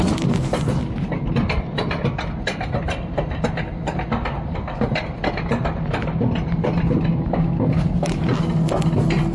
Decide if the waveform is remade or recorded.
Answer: recorded